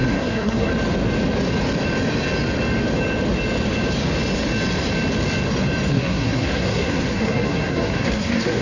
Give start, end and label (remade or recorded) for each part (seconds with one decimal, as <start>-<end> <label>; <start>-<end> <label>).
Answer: 0.0-0.7 remade; 0.7-5.9 recorded; 5.9-8.6 remade